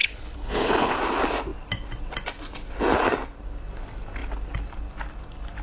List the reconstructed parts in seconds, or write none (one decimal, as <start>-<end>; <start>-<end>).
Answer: 0.0-1.0